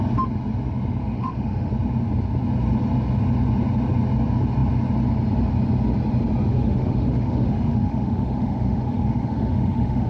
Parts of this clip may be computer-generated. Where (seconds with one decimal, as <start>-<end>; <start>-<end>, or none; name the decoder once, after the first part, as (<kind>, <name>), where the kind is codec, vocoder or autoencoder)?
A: 1.0-1.7 (autoencoder, DAC-VAE); 6.5-10.1